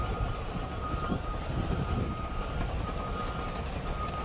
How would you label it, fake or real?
fake